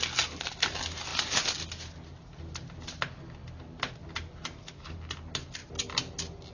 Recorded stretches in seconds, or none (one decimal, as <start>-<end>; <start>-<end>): 0.0-6.5